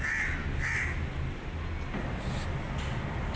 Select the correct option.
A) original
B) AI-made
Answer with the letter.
A